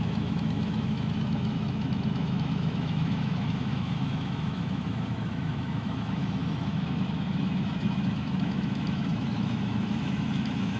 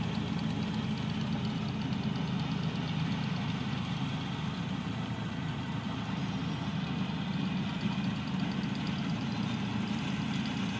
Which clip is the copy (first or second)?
first